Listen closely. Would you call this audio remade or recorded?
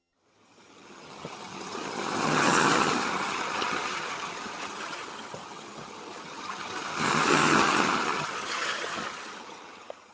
remade